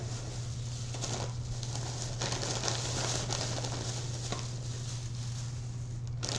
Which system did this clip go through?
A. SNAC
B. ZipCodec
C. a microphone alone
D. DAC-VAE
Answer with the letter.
C